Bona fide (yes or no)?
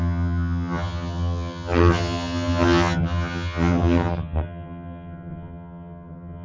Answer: no